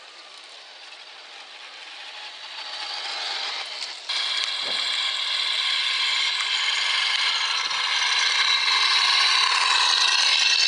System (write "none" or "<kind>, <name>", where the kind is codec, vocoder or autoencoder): vocoder, BigVGAN v2